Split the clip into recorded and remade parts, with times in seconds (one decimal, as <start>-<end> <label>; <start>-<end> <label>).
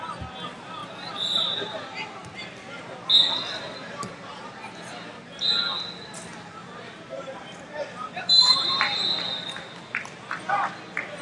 0.0-0.8 recorded; 0.8-1.6 remade; 1.6-6.6 recorded; 6.6-8.8 remade; 8.8-11.2 recorded